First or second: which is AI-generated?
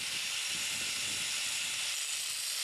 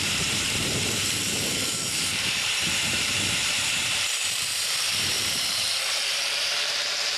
second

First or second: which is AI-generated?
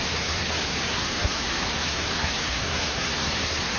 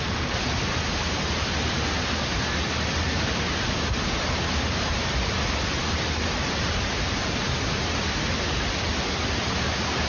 first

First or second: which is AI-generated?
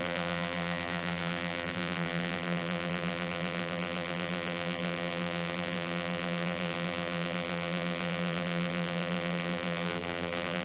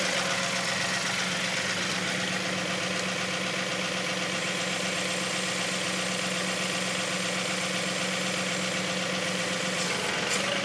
first